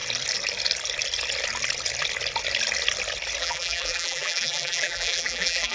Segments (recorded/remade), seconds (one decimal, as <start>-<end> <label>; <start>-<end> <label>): 0.0-3.4 recorded; 3.4-5.7 remade